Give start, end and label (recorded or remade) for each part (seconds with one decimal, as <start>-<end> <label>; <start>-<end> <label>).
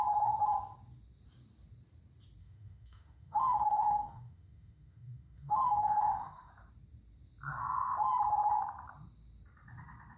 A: 0.0-2.4 recorded; 2.4-6.5 remade; 6.5-10.2 recorded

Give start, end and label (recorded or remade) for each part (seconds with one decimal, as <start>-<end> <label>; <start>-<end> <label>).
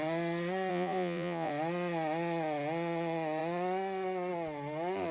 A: 0.0-0.7 recorded; 0.7-1.5 remade; 1.5-5.1 recorded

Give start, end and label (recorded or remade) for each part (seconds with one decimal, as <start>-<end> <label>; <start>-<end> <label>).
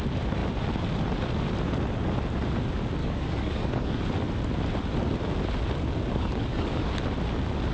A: 0.0-3.0 recorded; 3.0-4.0 remade; 4.0-6.1 recorded; 6.1-6.9 remade; 6.9-7.7 recorded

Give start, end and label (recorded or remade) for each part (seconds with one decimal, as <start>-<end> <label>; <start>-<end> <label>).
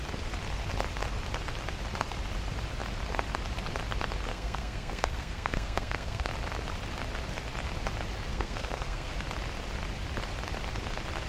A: 0.0-4.3 recorded; 4.3-6.3 remade; 6.3-8.3 recorded; 8.3-9.1 remade; 9.1-11.3 recorded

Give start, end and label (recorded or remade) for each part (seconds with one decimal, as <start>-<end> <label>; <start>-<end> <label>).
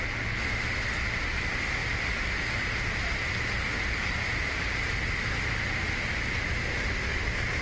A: 0.0-7.6 recorded